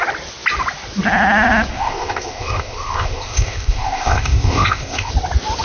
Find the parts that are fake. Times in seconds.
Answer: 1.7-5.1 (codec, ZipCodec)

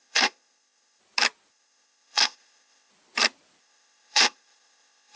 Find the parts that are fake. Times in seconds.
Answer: 0.0-1.0 (codec, ZipCodec); 1.5-2.9; 3.6-5.2